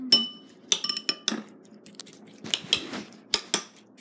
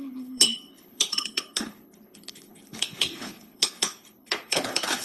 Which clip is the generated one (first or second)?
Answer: second